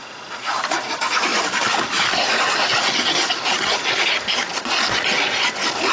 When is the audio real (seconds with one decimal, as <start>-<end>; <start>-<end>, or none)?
1.3-1.9; 2.7-5.9